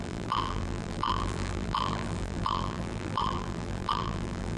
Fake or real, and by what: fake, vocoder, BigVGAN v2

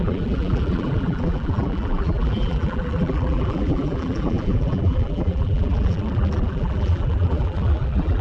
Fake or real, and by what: fake, vocoder, BigVGAN v2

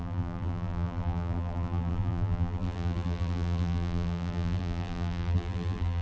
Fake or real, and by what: fake, vocoder, BigVGAN v2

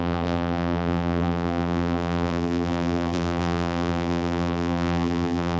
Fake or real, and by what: fake, vocoder, BigVGAN v2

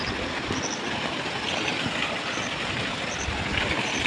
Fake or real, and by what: real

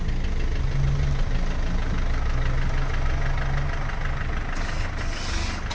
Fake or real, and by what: real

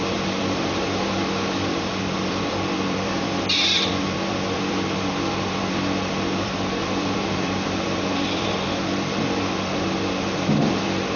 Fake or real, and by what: fake, vocoder, BigVGAN v2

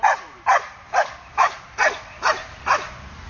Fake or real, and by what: fake, vocoder, BigVGAN v2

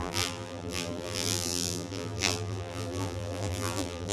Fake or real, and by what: fake, vocoder, BigVGAN v2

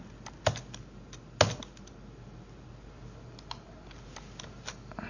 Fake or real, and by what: real